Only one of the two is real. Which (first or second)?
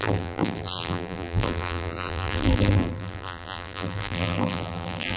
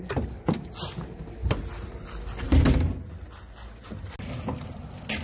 second